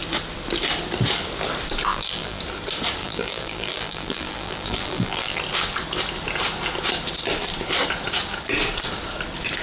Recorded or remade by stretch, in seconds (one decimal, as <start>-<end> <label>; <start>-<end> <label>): 0.0-1.9 recorded; 1.9-2.4 remade; 2.4-3.0 recorded; 3.0-5.4 remade; 5.4-9.6 recorded